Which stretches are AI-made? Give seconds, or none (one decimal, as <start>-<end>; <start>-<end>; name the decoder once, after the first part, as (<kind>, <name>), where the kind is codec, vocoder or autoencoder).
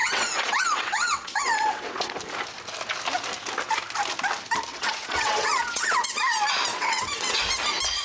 0.0-2.1 (vocoder, WaveNeXt); 4.7-6.2; 6.7-7.4